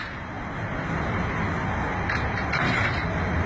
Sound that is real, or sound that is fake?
fake